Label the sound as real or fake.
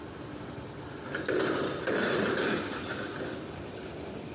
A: real